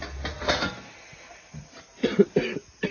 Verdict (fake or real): real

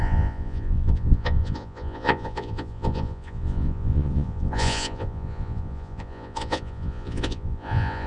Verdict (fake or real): fake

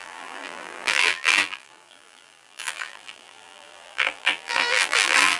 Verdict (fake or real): fake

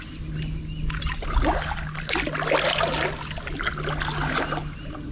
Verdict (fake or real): real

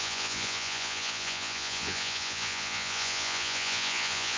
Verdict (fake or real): fake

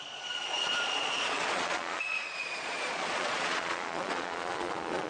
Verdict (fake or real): fake